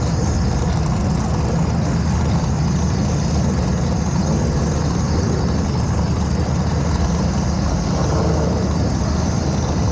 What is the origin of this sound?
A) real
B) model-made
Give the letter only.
A